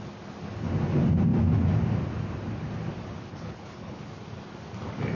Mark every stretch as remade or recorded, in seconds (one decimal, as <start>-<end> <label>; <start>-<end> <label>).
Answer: 0.0-3.3 recorded; 3.3-4.0 remade; 4.0-5.1 recorded